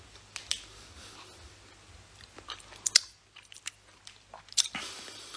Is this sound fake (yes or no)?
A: no